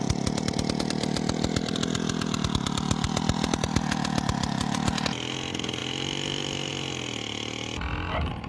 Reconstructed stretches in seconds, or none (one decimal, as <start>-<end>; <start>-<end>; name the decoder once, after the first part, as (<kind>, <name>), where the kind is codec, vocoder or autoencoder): none